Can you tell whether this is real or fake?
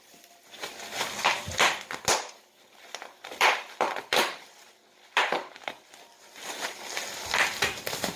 fake